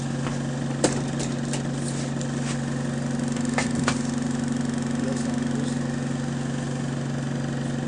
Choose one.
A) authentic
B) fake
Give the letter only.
A